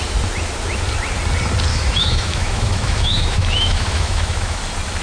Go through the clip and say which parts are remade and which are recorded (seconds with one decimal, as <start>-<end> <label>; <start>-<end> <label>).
0.0-1.7 recorded; 1.7-4.6 remade; 4.6-5.0 recorded

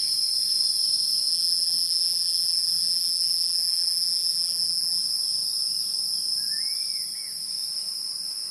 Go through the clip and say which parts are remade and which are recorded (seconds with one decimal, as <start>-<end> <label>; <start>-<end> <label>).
0.0-1.3 recorded; 1.3-5.0 remade; 5.0-8.5 recorded

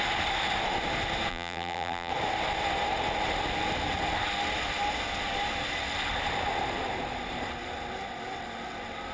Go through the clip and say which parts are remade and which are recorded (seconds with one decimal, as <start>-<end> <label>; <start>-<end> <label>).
0.0-1.3 recorded; 1.3-2.1 remade; 2.1-9.1 recorded

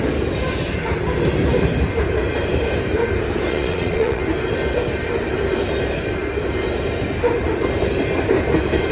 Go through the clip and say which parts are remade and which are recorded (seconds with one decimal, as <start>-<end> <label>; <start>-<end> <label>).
0.0-3.5 recorded; 3.5-4.2 remade; 4.2-8.9 recorded

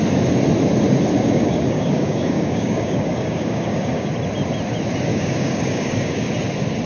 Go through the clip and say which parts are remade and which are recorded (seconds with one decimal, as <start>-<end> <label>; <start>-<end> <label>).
0.0-1.1 recorded; 1.1-4.1 remade; 4.1-5.1 recorded; 5.1-6.3 remade; 6.3-6.9 recorded

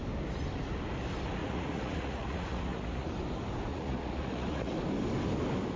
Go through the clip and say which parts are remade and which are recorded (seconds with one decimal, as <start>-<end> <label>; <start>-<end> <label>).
0.0-1.4 recorded; 1.4-3.1 remade; 3.1-3.7 recorded; 3.7-4.7 remade; 4.7-5.8 recorded